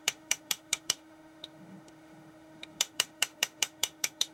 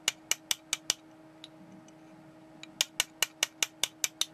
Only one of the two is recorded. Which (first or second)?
second